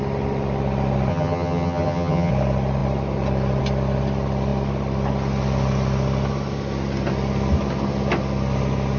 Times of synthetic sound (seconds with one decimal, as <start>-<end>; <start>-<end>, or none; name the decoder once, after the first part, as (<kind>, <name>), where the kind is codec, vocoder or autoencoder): 1.1-2.3 (vocoder, HiFi-GAN)